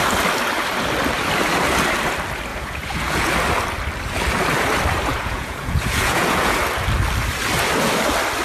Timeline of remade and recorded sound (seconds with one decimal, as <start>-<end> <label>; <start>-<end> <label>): 0.0-2.5 recorded; 2.5-3.3 remade; 3.3-5.1 recorded; 5.1-6.6 remade; 6.6-8.4 recorded